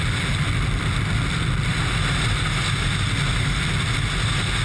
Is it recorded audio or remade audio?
recorded